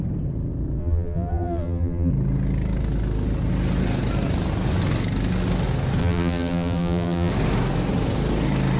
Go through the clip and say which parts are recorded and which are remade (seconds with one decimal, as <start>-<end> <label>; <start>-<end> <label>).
0.0-0.8 recorded; 0.8-2.1 remade; 2.1-6.0 recorded; 6.0-7.3 remade; 7.3-8.8 recorded